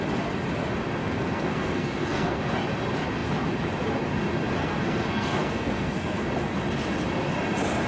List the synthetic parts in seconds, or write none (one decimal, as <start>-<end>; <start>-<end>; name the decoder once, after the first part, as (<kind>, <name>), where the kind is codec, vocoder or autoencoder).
1.0-2.4 (codec, SNAC); 4.6-6.3